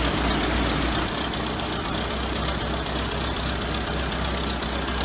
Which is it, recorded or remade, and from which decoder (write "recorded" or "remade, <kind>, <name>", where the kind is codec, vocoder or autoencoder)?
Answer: recorded